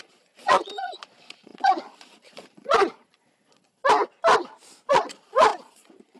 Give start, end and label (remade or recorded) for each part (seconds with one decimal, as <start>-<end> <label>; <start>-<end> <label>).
0.0-3.8 remade; 3.8-4.9 recorded; 4.9-6.2 remade